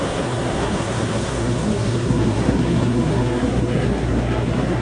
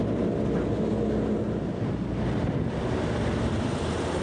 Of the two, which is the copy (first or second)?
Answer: first